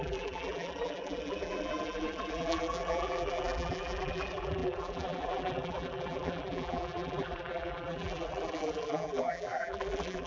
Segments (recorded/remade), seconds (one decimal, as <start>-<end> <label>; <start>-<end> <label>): 0.0-10.3 remade